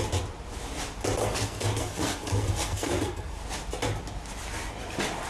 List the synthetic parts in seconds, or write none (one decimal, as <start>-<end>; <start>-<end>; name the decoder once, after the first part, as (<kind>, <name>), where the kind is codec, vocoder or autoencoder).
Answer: 1.2-3.4 (codec, SNAC)